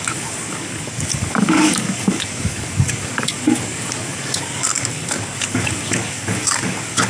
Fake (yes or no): yes